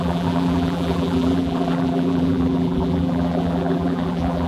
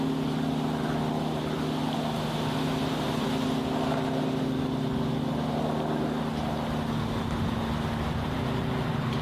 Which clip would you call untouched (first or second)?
second